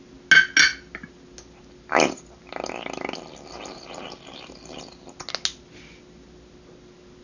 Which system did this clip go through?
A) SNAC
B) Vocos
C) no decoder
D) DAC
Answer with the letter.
C